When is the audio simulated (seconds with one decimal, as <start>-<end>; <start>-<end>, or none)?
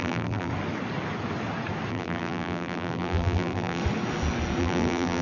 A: 0.0-0.5; 1.9-3.8; 4.6-5.2